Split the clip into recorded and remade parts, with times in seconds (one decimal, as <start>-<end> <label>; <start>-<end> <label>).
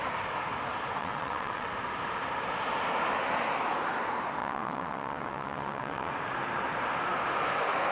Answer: 0.0-1.0 recorded; 1.0-1.7 remade; 1.7-4.4 recorded; 4.4-6.1 remade; 6.1-7.9 recorded